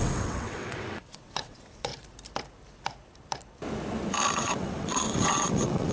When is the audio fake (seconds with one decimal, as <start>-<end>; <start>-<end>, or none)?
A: 0.0-1.9; 4.3-5.9